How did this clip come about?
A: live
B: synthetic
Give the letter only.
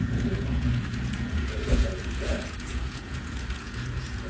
B